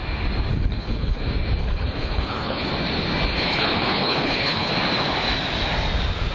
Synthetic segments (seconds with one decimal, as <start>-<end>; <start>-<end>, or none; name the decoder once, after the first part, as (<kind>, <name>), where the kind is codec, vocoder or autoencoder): 0.5-1.2 (codec, HILCodec); 1.6-2.7; 3.3-4.7